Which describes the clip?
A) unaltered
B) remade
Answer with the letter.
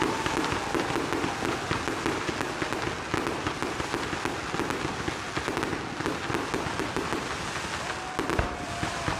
A